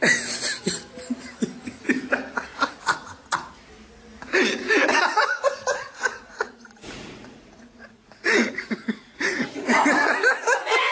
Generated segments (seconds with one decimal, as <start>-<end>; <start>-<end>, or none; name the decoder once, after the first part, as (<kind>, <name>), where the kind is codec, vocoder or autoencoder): 2.5-3.5 (vocoder, Vocos); 4.9-10.1